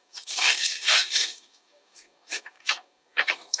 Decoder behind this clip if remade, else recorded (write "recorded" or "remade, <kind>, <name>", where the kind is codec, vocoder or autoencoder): remade, codec, DAC